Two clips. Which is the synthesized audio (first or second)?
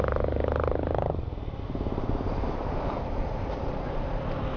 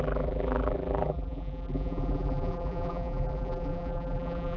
second